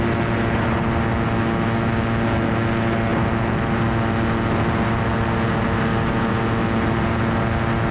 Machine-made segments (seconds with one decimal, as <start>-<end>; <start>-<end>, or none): none

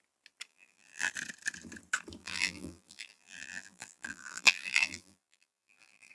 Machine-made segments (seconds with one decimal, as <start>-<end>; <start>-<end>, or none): 0.5-1.1; 2.2-6.1